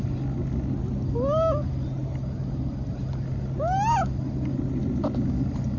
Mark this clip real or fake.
real